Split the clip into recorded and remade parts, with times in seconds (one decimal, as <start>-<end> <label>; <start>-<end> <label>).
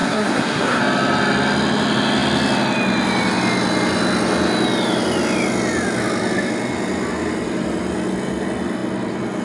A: 0.0-0.8 remade; 0.8-9.4 recorded